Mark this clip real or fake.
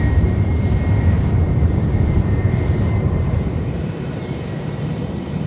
fake